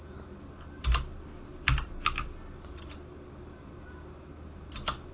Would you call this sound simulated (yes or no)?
no